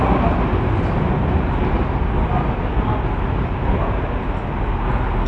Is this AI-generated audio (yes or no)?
no